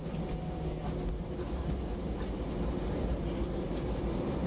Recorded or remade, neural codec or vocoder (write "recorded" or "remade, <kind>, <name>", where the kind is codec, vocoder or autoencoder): recorded